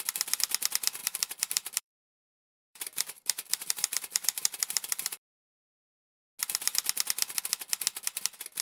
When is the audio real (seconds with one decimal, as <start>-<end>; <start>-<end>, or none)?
0.0-1.0; 5.3-8.6